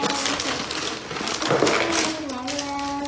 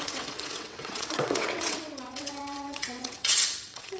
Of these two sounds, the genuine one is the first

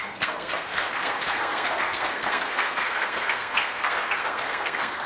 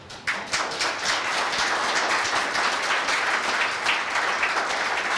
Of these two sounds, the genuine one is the second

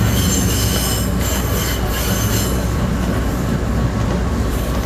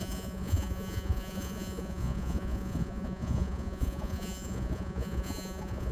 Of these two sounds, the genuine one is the first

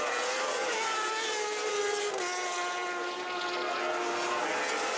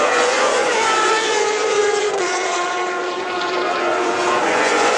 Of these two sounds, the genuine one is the first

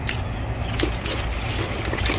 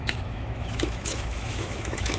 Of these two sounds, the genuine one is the first